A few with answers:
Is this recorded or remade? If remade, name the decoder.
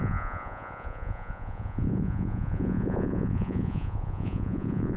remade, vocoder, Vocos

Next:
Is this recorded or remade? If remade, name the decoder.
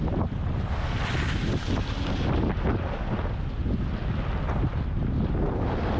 recorded